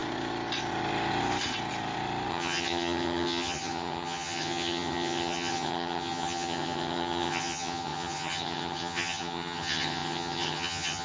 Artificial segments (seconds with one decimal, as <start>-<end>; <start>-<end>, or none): 2.3-11.0